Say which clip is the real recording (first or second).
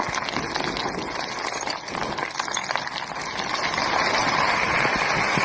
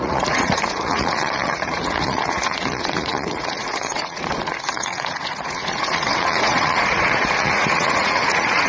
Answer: first